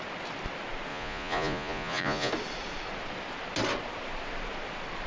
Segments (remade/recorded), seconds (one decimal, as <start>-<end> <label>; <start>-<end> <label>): 0.0-0.9 recorded; 0.9-2.3 remade; 2.3-5.1 recorded